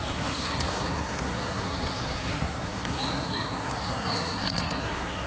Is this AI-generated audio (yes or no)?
yes